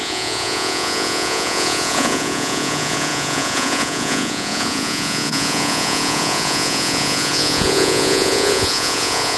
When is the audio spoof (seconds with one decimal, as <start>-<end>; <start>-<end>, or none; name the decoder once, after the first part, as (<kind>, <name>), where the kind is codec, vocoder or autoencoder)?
0.0-9.4 (vocoder, Vocos)